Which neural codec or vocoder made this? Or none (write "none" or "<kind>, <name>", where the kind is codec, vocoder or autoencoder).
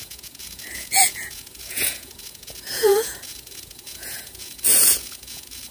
vocoder, Vocos